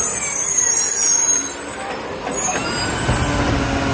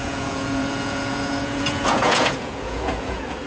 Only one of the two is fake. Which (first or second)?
second